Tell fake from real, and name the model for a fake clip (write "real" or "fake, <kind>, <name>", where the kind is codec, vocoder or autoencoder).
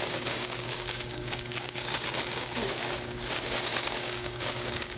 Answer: fake, codec, DAC